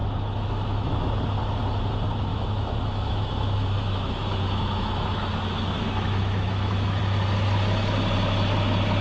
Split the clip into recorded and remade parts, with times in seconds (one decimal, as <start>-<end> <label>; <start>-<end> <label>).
0.0-0.9 remade; 0.9-2.3 recorded; 2.3-7.0 remade; 7.0-9.0 recorded